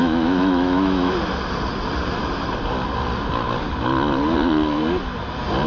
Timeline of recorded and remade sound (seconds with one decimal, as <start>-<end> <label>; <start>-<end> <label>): 0.0-1.1 remade; 1.1-5.7 recorded